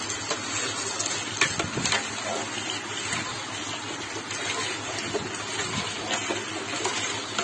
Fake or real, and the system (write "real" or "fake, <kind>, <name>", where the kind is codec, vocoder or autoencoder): real